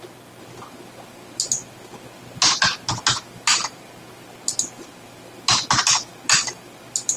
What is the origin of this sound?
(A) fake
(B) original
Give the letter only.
B